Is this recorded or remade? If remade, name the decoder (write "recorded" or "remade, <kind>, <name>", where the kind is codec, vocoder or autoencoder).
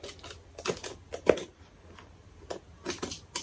recorded